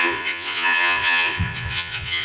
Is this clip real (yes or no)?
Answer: no